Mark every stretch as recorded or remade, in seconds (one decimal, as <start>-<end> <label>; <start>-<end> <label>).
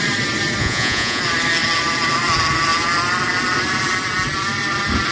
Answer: 0.0-0.6 recorded; 0.6-1.2 remade; 1.2-5.1 recorded